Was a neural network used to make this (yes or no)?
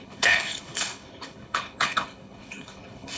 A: yes